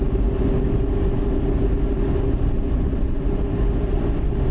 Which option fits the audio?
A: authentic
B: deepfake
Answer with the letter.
A